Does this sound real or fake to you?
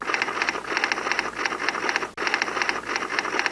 real